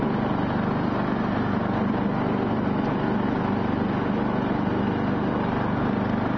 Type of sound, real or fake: real